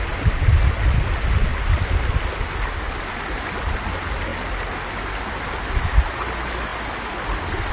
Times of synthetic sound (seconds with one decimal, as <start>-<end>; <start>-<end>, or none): none